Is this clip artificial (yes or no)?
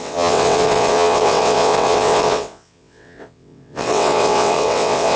yes